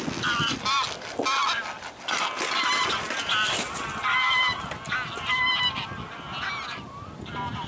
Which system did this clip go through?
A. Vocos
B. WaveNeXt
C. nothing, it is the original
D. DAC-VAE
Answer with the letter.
C